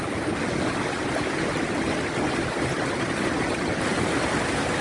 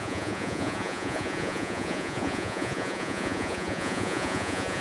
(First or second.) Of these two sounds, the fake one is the second